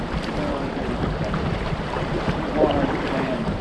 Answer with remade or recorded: remade